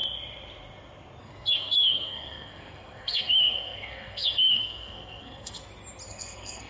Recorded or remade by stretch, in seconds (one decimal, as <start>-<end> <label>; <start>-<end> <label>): 0.0-1.2 recorded; 1.2-5.6 remade; 5.6-6.1 recorded; 6.1-6.7 remade